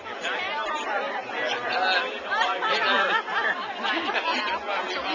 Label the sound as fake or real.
real